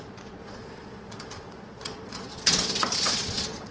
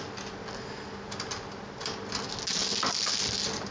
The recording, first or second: second